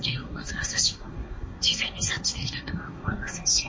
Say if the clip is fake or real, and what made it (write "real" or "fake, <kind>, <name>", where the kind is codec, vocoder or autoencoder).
fake, codec, SNAC